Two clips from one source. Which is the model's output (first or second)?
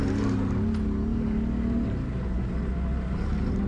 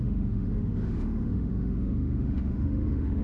second